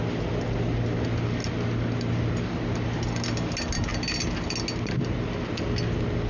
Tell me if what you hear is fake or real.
real